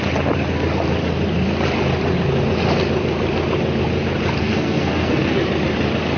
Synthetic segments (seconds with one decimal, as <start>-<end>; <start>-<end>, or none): 4.4-5.4